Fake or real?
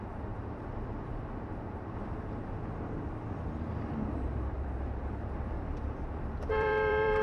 fake